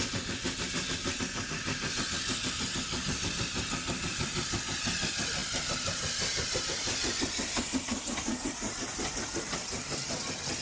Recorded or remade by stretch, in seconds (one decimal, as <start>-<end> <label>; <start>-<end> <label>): 0.0-10.6 recorded